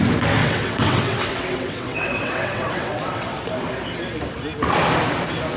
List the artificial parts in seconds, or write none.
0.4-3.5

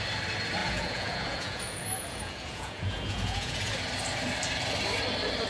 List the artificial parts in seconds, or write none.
0.6-3.7

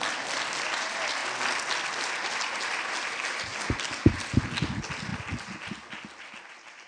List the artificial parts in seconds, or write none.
none

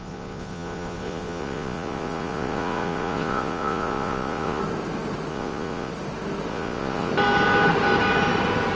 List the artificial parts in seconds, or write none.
0.0-4.6; 5.3-5.9; 6.5-7.1